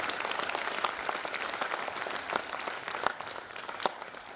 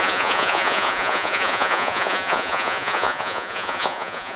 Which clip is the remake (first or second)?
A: second